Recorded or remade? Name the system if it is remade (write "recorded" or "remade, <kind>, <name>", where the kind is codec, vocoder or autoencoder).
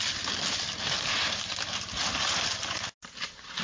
recorded